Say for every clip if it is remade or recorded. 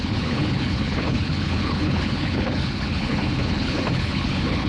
remade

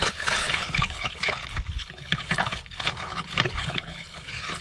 remade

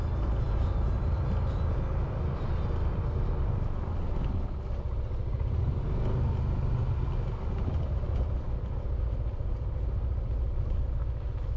recorded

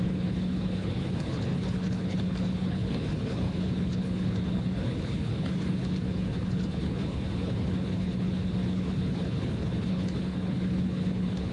remade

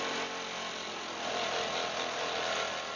recorded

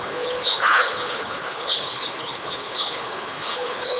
remade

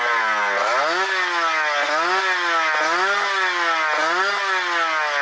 recorded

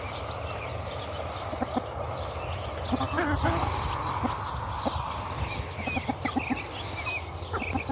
recorded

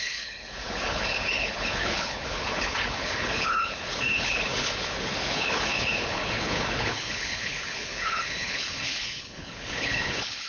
remade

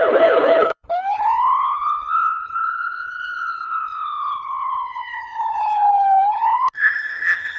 remade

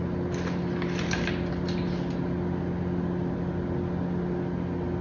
recorded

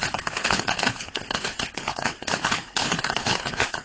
remade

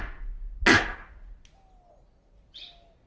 recorded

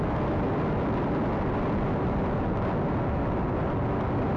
recorded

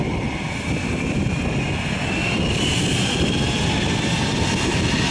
recorded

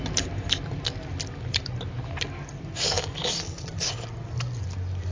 recorded